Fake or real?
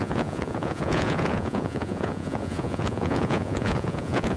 fake